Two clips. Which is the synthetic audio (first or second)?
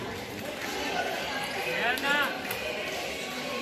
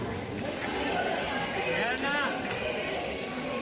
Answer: first